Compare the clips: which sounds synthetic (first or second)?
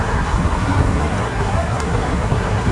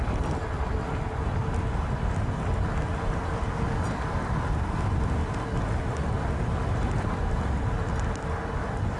first